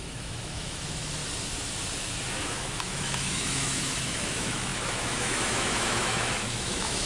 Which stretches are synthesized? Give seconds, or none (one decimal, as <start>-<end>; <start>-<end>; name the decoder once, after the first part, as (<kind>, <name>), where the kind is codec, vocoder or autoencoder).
0.0-1.2 (autoencoder, DAC-VAE); 2.4-7.1